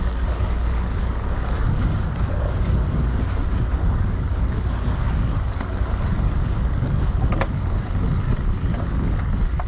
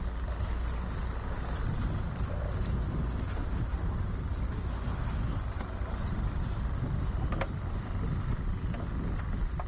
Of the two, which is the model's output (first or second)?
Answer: first